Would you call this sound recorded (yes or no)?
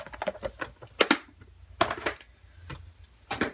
yes